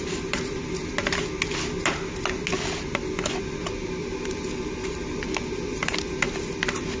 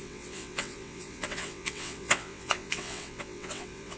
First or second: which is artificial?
second